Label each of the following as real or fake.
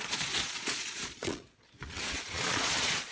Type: fake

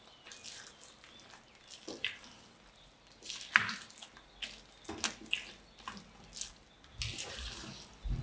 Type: real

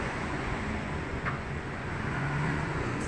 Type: fake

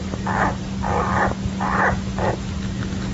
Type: real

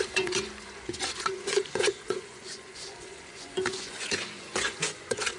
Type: fake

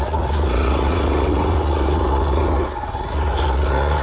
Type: fake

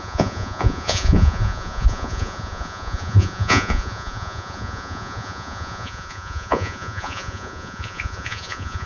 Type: fake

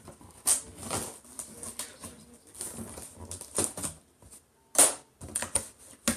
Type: real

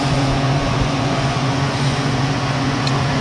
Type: fake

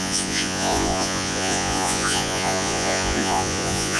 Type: fake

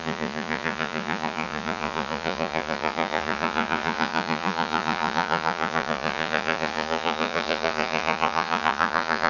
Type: fake